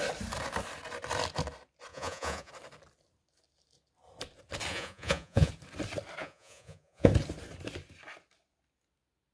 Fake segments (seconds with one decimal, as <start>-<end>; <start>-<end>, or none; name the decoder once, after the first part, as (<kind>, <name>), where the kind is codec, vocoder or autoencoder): 1.9-2.5 (vocoder, Vocos); 4.7-5.5; 6.2-7.1